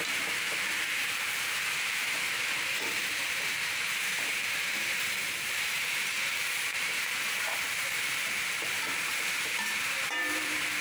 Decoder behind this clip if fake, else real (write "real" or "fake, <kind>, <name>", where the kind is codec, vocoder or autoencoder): fake, vocoder, BigVGAN v2